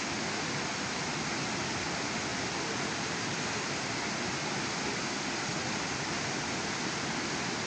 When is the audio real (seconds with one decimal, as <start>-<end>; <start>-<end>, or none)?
0.0-7.7